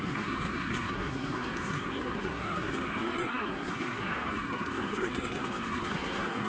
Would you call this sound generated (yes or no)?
yes